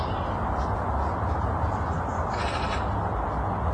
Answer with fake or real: real